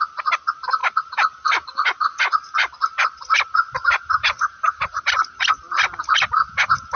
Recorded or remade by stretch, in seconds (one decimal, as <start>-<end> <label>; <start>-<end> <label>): 0.0-0.8 recorded; 0.8-5.0 remade; 5.0-7.0 recorded